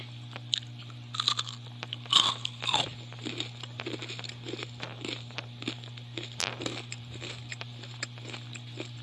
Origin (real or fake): fake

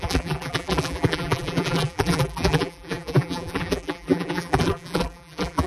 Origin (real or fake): fake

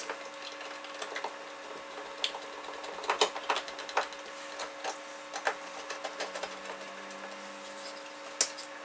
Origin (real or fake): real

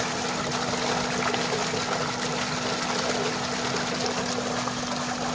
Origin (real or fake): real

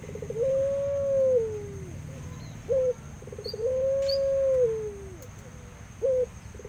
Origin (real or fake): real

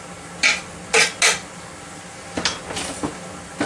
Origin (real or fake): real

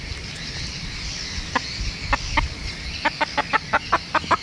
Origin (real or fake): real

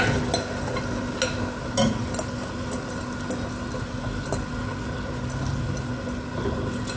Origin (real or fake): real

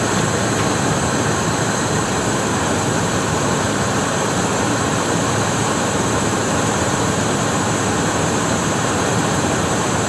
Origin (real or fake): fake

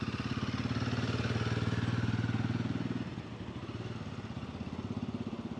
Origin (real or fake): real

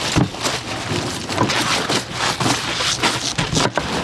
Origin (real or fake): real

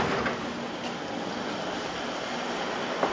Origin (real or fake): fake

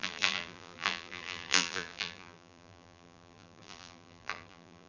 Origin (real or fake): fake